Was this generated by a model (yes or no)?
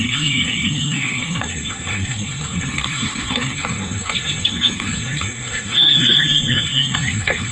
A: yes